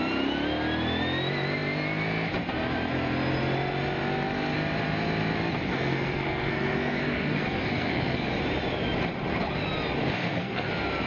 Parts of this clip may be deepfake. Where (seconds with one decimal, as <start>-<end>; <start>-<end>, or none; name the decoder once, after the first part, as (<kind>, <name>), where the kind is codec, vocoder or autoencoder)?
5.7-8.3 (codec, SNAC); 10.1-10.7